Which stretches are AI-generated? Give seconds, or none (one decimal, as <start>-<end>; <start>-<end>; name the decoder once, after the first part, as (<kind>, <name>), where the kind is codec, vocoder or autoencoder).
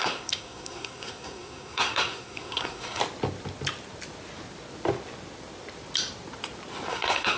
0.0-3.0 (codec, SNAC); 6.9-7.4